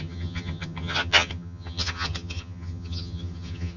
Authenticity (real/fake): fake